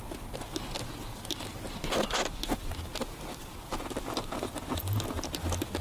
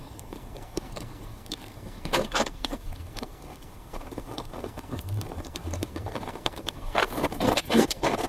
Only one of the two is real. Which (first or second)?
first